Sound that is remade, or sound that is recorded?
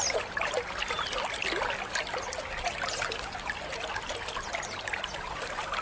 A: recorded